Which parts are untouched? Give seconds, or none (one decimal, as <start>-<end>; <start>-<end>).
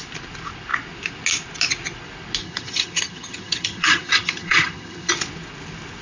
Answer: 0.0-2.4; 5.1-6.0